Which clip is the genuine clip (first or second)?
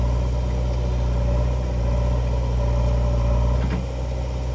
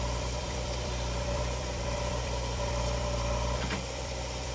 first